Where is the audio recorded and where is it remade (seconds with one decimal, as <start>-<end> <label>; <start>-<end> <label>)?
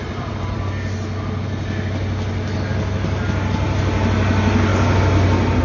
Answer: 0.0-5.6 recorded